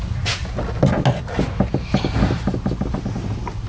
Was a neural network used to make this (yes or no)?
no